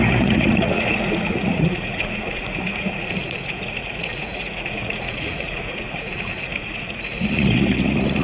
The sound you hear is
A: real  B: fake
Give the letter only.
B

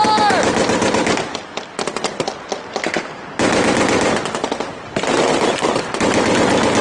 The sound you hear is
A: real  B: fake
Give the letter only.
A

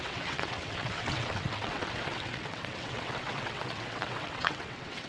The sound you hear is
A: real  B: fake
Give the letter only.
B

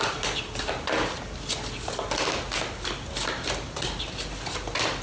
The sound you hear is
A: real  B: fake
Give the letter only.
A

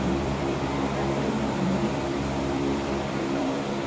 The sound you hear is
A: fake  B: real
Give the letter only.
A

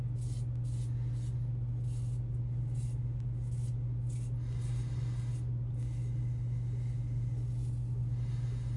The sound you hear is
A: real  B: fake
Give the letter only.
A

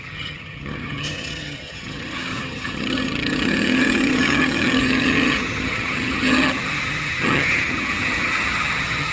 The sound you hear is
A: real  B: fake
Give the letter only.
B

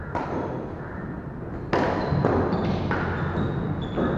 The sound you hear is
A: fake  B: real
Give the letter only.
B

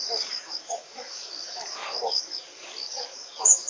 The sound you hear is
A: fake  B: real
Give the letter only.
A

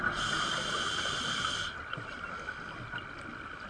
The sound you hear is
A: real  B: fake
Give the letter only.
A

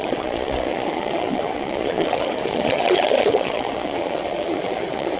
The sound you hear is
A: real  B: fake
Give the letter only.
B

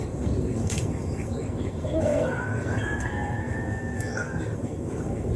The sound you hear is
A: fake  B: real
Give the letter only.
A